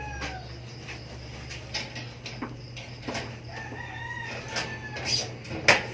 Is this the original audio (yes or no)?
yes